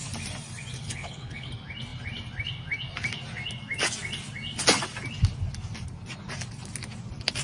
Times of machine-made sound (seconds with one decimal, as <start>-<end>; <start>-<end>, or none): 0.8-1.5